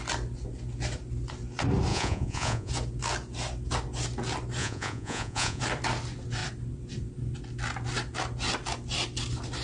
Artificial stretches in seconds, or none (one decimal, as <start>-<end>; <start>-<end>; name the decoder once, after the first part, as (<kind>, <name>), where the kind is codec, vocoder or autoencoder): 1.9-2.7 (vocoder, Vocos); 4.6-5.6